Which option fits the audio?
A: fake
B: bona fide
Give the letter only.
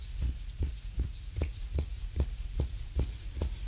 A